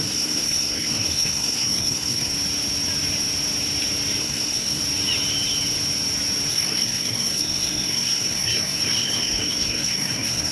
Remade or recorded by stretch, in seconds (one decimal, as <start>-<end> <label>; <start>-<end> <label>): 0.0-2.3 remade; 2.3-4.2 recorded; 4.2-4.8 remade; 4.8-6.5 recorded; 6.5-10.5 remade